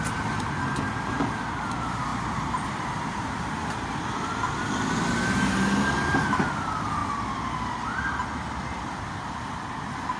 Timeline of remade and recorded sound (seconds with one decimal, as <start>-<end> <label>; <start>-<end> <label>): 0.0-10.2 recorded